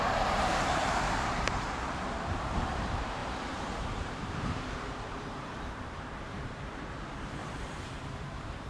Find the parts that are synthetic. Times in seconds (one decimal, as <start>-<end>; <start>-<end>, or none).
0.0-7.4; 8.2-8.7